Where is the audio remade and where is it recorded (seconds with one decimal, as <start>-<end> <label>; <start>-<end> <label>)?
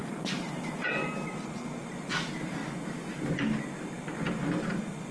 0.0-0.9 remade; 0.9-5.1 recorded